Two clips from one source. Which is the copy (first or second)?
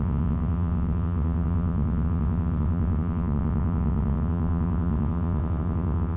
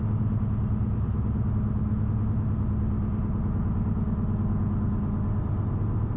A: first